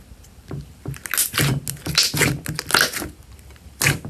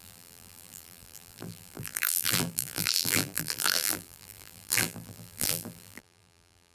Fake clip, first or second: second